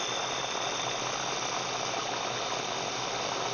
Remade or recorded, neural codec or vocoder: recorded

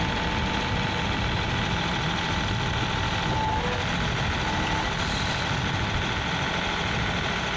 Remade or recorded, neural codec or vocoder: recorded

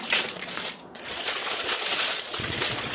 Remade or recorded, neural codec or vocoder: remade, vocoder, Vocos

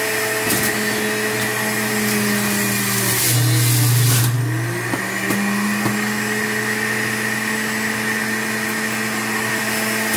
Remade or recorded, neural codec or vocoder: recorded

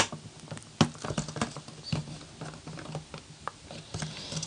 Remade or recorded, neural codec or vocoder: recorded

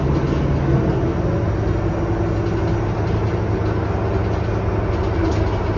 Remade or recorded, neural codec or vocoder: recorded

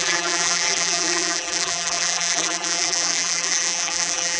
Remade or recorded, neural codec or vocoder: remade, vocoder, BigVGAN v2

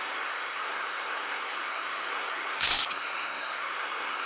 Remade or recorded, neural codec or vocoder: remade, codec, SNAC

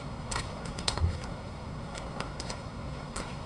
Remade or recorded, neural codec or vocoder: remade, codec, SNAC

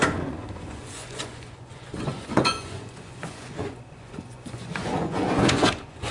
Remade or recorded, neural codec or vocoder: remade, vocoder, Vocos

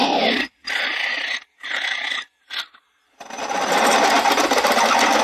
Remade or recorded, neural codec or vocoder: recorded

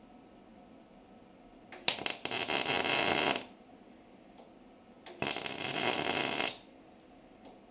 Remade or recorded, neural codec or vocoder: recorded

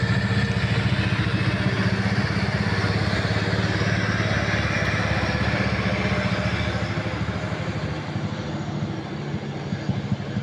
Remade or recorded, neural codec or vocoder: recorded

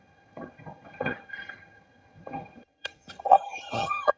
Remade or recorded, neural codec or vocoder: remade, vocoder, HiFi-GAN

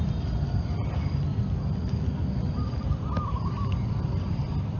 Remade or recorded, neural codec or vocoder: recorded